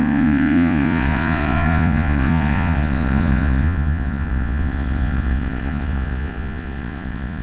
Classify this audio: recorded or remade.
remade